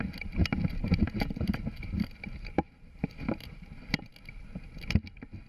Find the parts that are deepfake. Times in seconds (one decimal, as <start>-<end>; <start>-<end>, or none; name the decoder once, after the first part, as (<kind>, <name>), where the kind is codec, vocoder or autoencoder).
0.8-4.1 (vocoder, BigVGAN v2)